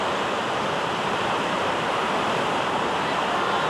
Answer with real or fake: fake